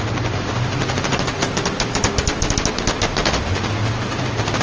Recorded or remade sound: recorded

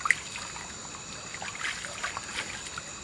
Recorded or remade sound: recorded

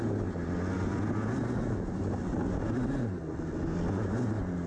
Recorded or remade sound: recorded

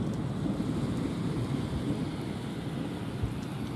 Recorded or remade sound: recorded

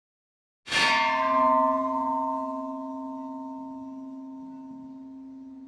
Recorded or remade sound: recorded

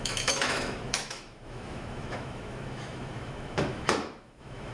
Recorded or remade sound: remade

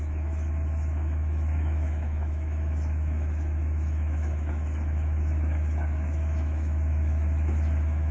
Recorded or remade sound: remade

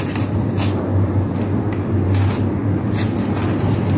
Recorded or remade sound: recorded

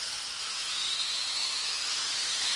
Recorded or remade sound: remade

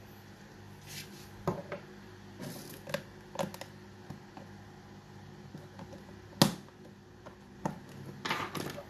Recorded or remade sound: recorded